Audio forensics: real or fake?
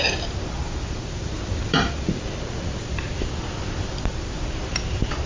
fake